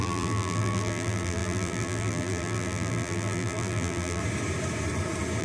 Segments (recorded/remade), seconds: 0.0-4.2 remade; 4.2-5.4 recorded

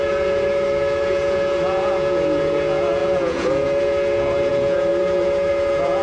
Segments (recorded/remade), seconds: 0.0-6.0 remade

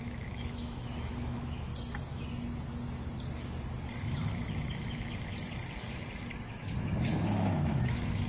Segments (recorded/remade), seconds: 0.0-1.7 remade; 1.7-4.0 recorded; 4.0-5.3 remade; 5.3-6.5 recorded; 6.5-8.3 remade

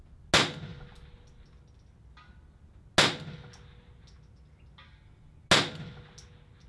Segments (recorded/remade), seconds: 0.0-6.7 recorded

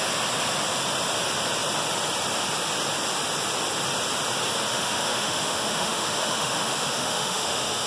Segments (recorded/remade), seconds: 0.0-4.7 recorded; 4.7-7.9 remade